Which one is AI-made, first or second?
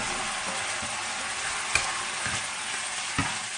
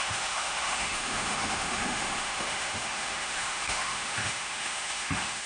second